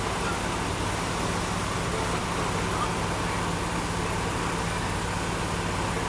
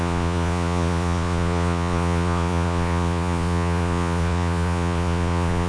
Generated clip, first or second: second